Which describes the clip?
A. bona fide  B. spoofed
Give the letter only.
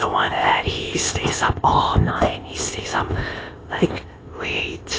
B